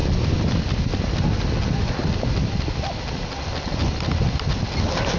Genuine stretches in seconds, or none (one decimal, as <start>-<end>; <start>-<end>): 0.6-5.2